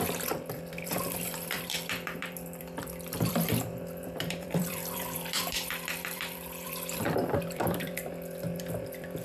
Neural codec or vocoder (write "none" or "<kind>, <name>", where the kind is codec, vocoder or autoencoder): vocoder, BigVGAN v2